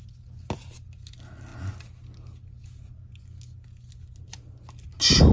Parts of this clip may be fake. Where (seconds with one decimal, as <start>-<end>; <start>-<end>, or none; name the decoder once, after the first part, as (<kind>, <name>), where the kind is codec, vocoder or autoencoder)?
none